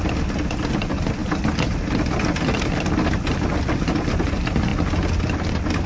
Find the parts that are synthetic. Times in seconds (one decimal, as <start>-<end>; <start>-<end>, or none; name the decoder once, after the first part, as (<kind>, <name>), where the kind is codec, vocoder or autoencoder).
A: none